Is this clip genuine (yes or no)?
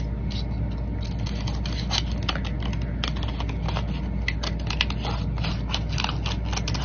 yes